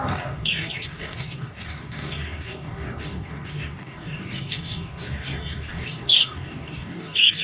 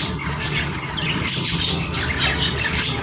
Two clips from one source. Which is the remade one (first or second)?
first